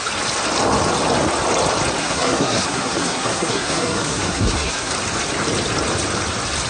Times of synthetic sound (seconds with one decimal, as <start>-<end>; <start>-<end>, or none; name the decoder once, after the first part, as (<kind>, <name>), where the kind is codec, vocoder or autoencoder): 2.0-4.9 (codec, SNAC)